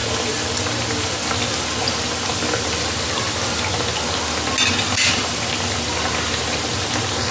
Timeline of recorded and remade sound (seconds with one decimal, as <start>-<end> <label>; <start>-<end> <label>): 0.0-3.6 remade; 3.6-5.2 recorded; 5.2-6.3 remade; 6.3-7.3 recorded